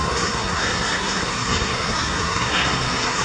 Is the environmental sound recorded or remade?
remade